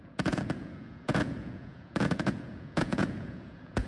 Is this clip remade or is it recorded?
remade